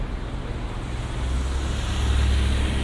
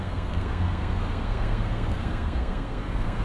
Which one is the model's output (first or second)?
second